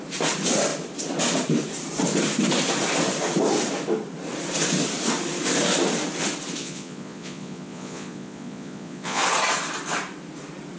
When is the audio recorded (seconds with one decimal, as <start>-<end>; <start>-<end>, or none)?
0.0-6.6; 9.2-10.8